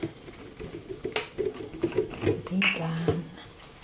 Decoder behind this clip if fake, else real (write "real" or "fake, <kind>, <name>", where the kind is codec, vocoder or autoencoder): real